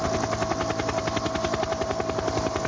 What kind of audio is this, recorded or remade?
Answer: recorded